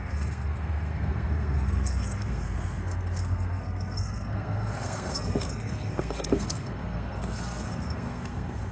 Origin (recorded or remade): remade